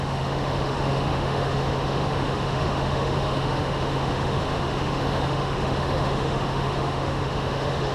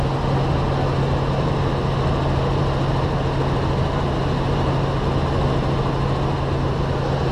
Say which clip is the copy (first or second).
first